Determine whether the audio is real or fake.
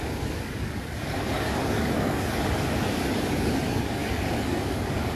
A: fake